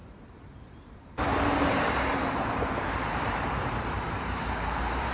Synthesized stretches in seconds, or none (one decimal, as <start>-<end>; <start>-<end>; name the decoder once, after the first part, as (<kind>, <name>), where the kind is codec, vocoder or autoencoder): 0.0-5.1 (vocoder, BigVGAN v2)